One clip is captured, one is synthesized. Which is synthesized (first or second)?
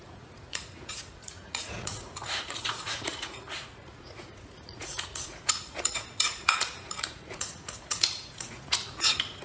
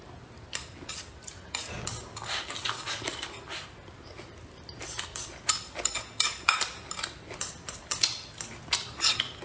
first